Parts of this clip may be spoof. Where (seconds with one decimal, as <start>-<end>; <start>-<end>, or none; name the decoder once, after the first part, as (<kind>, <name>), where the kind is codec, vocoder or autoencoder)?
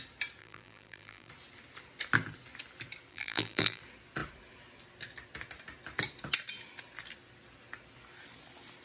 0.4-1.3 (vocoder, BigVGAN v2); 3.1-3.8